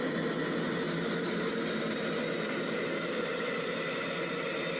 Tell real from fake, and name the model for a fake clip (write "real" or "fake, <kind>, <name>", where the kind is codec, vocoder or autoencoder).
real